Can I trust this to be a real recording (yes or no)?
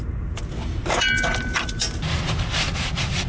yes